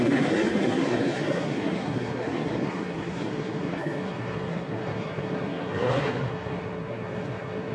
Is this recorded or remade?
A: remade